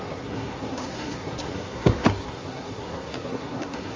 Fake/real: fake